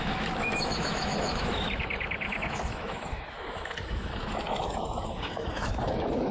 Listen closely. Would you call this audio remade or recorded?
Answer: remade